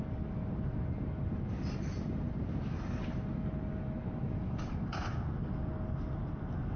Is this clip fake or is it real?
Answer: real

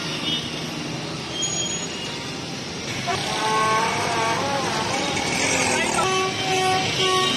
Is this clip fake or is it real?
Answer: real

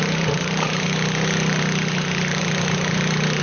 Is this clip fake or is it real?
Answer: fake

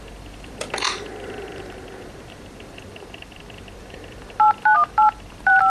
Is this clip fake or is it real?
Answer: fake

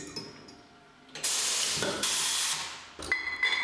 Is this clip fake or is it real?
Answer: real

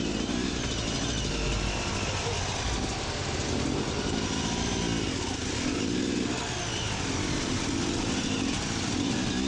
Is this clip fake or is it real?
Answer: real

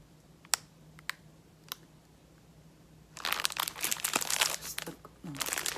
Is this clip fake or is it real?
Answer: real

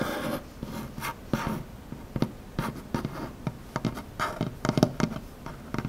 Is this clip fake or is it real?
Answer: real